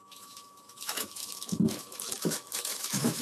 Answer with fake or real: fake